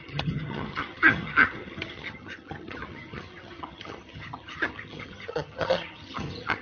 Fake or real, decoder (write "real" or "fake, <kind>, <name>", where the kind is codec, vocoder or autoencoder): fake, vocoder, HiFi-GAN